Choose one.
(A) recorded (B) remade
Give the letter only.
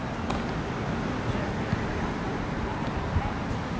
A